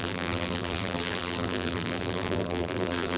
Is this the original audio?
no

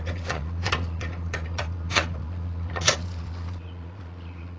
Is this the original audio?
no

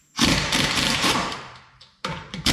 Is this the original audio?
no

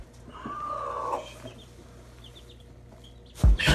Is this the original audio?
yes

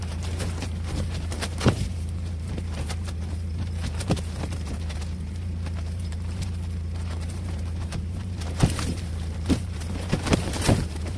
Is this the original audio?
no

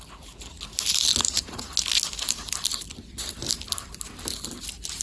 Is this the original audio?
yes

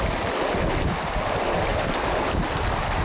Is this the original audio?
yes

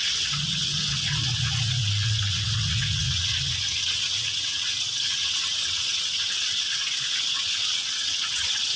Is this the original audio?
no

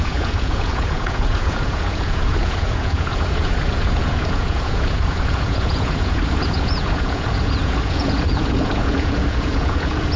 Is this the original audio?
no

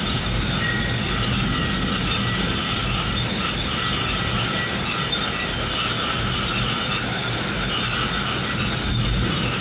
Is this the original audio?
yes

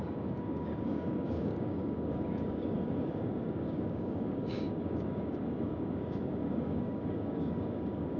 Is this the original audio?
no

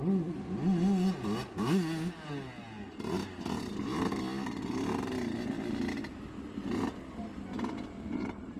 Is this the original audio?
yes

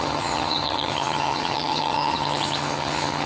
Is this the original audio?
no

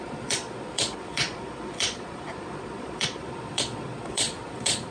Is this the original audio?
no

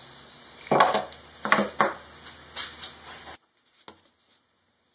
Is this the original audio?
yes